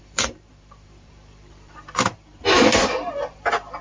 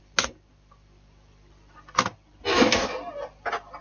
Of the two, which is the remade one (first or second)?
first